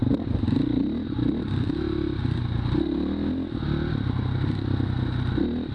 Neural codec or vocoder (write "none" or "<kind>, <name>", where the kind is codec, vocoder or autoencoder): none